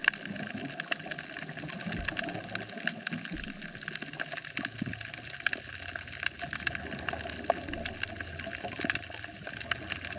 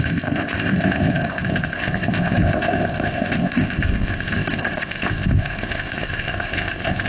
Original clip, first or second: first